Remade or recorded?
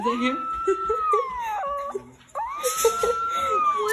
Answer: recorded